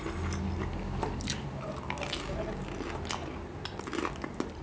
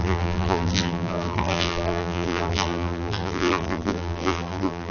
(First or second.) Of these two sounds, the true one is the first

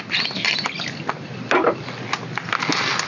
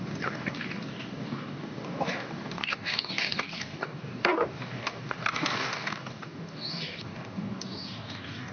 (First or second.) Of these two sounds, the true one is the first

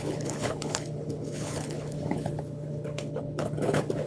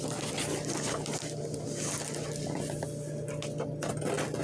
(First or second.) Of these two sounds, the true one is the second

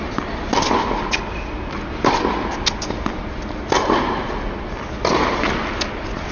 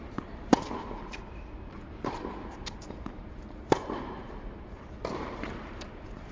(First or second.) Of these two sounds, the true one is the first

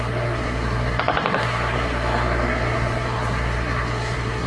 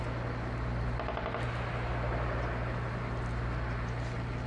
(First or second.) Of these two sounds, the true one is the second